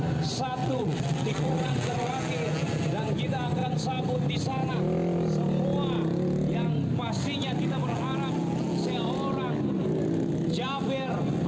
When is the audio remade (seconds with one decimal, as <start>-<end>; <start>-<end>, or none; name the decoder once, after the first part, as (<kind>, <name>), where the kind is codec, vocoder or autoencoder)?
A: 0.6-2.1 (vocoder, WaveNeXt)